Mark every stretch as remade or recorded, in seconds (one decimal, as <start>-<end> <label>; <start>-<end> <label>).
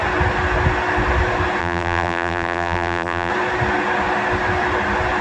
0.0-1.6 recorded; 1.6-3.3 remade; 3.3-5.2 recorded